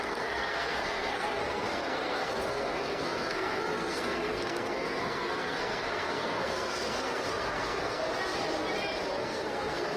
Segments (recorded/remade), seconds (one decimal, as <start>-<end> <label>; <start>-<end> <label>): 0.0-8.0 remade; 8.0-9.1 recorded; 9.1-10.0 remade